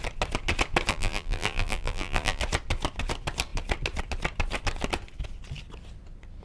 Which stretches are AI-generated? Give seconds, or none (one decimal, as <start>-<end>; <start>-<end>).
0.9-2.4